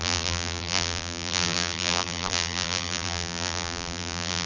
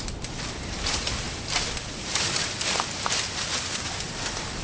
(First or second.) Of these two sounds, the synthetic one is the first